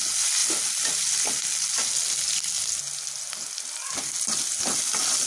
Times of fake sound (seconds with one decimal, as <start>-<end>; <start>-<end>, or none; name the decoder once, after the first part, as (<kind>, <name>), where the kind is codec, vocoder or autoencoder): none